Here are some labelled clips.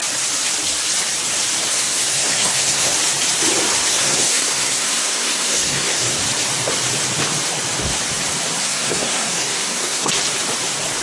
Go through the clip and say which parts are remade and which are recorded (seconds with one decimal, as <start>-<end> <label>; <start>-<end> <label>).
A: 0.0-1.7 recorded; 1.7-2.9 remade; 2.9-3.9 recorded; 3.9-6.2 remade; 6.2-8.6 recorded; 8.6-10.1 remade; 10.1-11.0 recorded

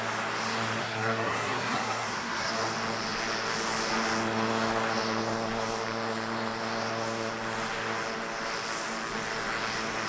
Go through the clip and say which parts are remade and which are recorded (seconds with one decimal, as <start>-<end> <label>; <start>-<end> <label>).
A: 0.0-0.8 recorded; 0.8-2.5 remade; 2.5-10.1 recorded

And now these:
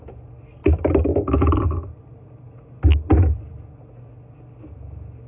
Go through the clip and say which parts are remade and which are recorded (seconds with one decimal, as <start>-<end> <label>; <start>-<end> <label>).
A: 0.0-0.6 recorded; 0.6-3.7 remade; 3.7-5.3 recorded

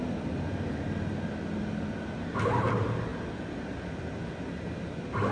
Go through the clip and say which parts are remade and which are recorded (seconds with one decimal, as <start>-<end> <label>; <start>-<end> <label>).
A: 0.0-5.3 recorded

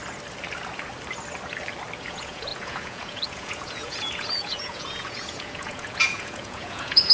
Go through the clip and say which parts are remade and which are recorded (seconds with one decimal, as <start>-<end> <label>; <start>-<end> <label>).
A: 0.0-2.0 recorded; 2.0-7.1 remade

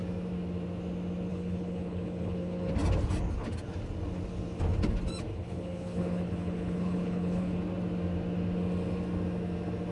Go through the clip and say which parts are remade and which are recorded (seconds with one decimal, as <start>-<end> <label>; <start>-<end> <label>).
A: 0.0-1.3 recorded; 1.3-2.7 remade; 2.7-5.3 recorded; 5.3-7.6 remade; 7.6-9.9 recorded

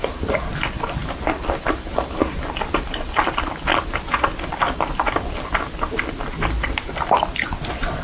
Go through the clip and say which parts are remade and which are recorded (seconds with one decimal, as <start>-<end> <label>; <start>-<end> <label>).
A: 0.0-8.0 recorded

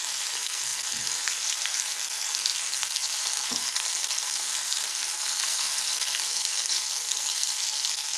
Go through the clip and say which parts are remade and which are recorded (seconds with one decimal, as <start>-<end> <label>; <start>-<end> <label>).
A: 0.0-8.2 remade